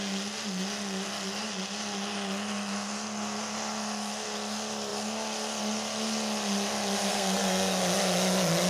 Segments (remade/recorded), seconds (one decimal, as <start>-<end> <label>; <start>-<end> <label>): 0.0-7.1 recorded; 7.1-7.8 remade; 7.8-8.7 recorded